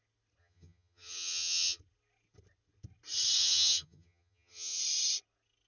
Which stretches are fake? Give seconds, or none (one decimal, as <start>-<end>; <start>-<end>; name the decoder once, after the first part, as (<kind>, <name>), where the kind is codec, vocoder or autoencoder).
0.4-1.8 (vocoder, HiFi-GAN); 3.4-4.8